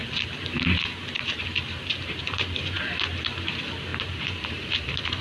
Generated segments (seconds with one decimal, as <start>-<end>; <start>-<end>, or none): 0.0-3.1; 3.9-5.2